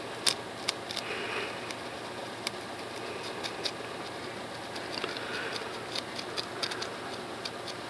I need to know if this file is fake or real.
real